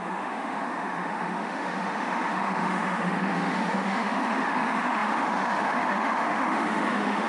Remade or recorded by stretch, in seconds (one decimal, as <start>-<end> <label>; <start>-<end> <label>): 0.0-7.3 remade